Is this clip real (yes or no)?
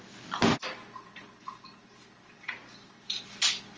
yes